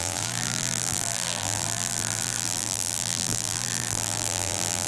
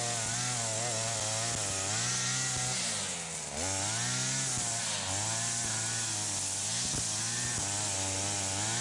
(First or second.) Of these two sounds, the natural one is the second